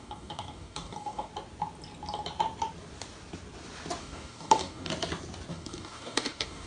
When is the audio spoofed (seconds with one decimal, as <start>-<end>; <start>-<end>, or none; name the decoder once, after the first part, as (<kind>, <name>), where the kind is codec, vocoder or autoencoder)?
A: 0.0-1.3 (codec, DAC); 4.0-4.9; 5.5-6.7